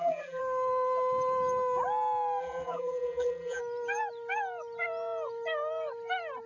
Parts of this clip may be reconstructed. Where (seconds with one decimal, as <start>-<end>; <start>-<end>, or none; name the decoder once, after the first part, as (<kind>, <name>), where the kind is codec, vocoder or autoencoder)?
0.0-0.4 (vocoder, BigVGAN v2); 2.4-3.6